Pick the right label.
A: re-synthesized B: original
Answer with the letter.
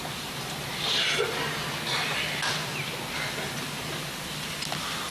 B